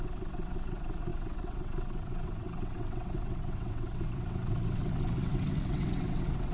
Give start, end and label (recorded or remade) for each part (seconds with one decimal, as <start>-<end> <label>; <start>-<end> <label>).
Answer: 0.0-6.5 remade